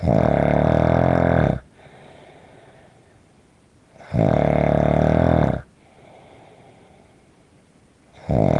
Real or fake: real